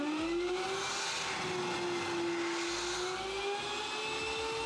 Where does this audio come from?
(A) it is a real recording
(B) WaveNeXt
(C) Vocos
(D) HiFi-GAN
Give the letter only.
A